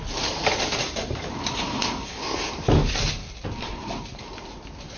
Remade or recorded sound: recorded